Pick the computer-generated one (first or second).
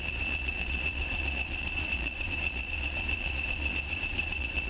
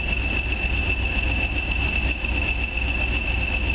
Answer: first